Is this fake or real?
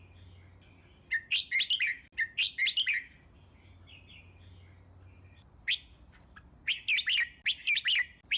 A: real